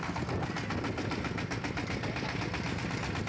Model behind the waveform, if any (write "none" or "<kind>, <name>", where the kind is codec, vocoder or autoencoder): none